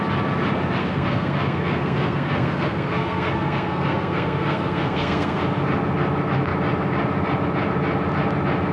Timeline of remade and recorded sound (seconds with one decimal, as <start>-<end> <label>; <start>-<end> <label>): 0.0-0.8 recorded; 0.8-5.4 remade; 5.4-8.7 recorded